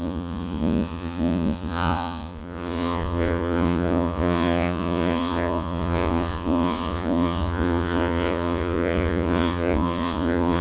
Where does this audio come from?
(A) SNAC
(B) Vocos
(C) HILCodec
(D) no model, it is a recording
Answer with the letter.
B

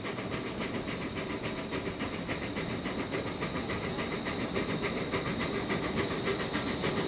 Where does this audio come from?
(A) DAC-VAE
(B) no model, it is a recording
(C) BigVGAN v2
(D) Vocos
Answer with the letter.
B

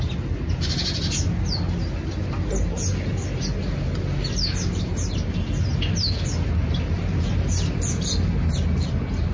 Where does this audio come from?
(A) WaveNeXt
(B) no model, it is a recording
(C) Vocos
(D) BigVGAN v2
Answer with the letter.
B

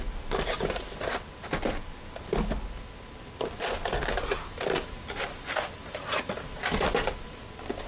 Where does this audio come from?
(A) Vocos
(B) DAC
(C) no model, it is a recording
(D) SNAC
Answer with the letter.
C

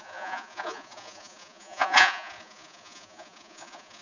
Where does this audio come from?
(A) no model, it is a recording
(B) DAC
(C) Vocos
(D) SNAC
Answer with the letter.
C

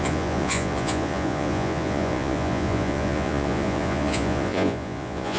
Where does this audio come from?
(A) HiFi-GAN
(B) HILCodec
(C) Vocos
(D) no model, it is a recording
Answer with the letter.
C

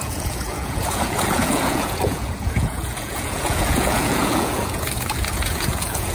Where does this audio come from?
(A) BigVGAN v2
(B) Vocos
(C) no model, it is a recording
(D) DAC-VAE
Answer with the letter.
B